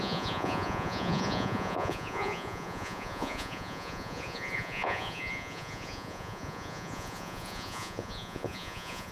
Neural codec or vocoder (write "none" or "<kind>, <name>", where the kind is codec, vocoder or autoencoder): vocoder, Vocos